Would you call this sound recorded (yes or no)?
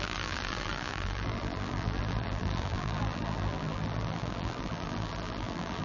no